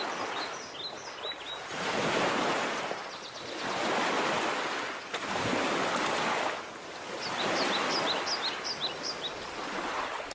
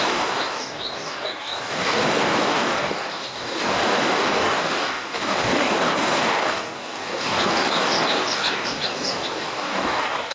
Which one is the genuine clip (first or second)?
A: first